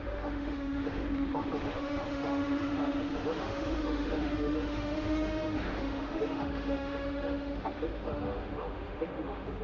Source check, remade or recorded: remade